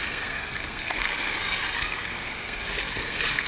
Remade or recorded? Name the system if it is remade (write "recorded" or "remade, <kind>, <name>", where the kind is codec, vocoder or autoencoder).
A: remade, codec, SNAC